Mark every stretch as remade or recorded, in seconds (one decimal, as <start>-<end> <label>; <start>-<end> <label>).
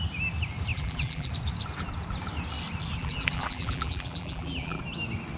0.0-0.7 recorded; 0.7-1.3 remade; 1.3-3.0 recorded; 3.0-4.8 remade; 4.8-5.4 recorded